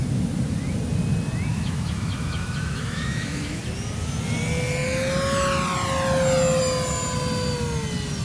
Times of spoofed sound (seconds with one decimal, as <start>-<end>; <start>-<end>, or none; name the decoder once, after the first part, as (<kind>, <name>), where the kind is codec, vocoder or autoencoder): 1.5-3.6 (autoencoder, DAC-VAE)